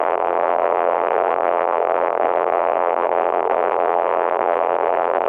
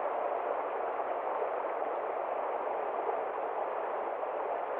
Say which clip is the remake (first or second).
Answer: first